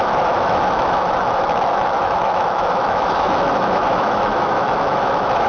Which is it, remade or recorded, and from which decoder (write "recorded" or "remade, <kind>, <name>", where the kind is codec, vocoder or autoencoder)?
remade, autoencoder, DAC-VAE